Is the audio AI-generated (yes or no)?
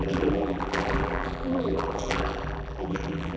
yes